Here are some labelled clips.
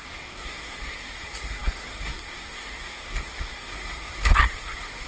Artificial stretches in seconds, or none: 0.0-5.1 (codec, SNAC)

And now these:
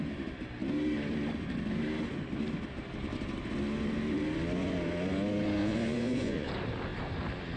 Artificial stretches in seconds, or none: 5.6-6.5 (vocoder, Vocos)

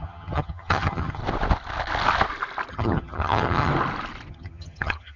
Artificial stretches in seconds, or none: 0.0-1.2 (vocoder, HiFi-GAN); 2.7-3.7; 4.3-5.2

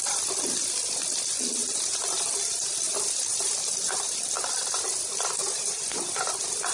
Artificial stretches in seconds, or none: 1.6-2.7 (vocoder, BigVGAN v2); 3.3-4.3; 5.4-6.2

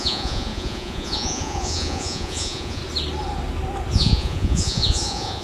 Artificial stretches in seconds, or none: 0.0-2.8 (vocoder, Vocos); 3.9-5.4

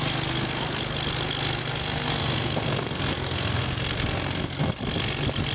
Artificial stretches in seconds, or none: 1.6-4.7 (codec, SNAC)

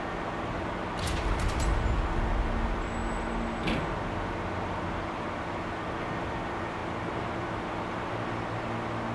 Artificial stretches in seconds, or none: none

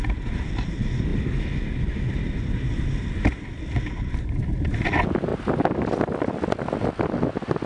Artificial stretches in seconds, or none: none